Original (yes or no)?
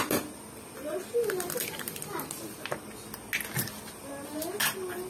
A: yes